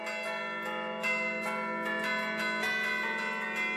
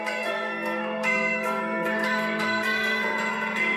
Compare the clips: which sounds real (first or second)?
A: first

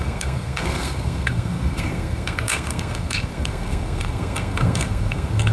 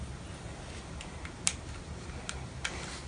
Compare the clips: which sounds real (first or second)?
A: second